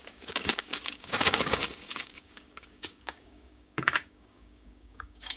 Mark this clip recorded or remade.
remade